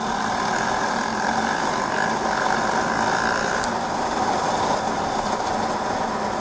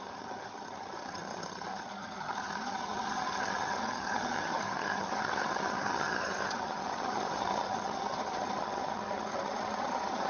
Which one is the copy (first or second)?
second